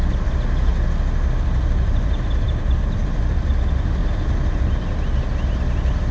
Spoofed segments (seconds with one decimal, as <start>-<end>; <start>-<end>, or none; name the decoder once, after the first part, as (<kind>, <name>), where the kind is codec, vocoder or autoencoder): 0.0-0.7 (vocoder, BigVGAN v2); 1.3-4.0; 4.5-6.1